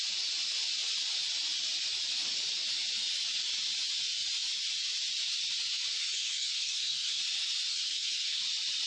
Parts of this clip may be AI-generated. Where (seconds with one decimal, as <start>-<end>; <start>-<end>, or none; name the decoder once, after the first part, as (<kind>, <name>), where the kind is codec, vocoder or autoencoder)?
6.0-7.2 (codec, SNAC); 7.7-8.4